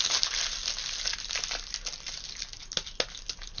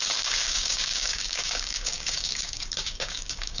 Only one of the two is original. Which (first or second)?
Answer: first